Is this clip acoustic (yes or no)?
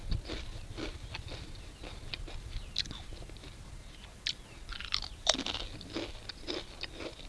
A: yes